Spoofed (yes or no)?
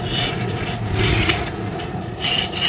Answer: yes